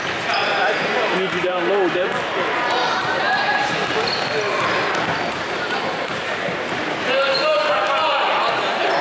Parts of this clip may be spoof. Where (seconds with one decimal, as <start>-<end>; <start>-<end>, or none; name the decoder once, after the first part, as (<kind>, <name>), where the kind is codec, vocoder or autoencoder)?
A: 0.0-2.1 (vocoder, BigVGAN v2); 2.9-3.8; 5.1-7.5; 8.4-9.0

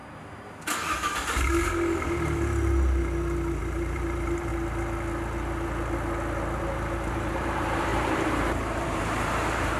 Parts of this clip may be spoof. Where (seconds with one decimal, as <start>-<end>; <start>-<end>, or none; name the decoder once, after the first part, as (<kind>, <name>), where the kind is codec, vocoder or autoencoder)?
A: 3.6-4.5 (vocoder, BigVGAN v2); 7.1-9.8

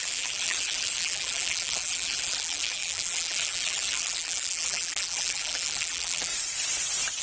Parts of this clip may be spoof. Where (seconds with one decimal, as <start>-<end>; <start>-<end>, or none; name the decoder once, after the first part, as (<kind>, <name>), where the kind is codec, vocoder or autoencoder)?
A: 0.0-6.3 (vocoder, BigVGAN v2)

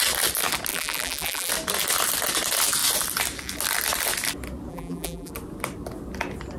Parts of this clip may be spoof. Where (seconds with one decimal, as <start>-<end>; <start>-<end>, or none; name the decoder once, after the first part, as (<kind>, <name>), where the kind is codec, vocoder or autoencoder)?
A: 0.7-1.5 (vocoder, BigVGAN v2); 4.7-5.3

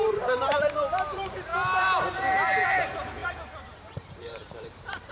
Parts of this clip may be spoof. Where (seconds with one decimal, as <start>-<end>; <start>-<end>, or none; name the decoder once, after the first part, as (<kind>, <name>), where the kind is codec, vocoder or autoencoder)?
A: 0.0-1.5 (vocoder, BigVGAN v2); 2.6-5.1

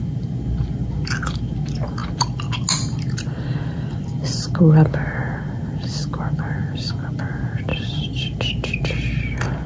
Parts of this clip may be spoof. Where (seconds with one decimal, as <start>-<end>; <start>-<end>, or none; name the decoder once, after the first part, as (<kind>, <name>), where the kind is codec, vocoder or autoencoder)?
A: none

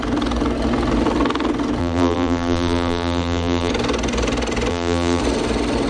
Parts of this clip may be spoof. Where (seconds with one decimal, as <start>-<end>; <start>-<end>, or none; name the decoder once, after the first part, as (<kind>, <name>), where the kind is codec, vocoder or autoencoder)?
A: 1.8-3.7 (vocoder, BigVGAN v2); 4.7-5.2

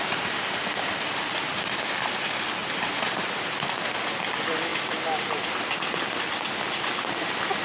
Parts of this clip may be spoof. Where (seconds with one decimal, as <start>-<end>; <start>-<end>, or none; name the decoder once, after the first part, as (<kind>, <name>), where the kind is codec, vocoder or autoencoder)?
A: none